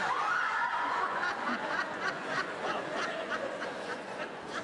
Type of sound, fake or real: fake